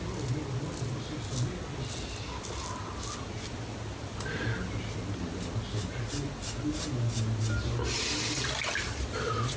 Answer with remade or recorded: recorded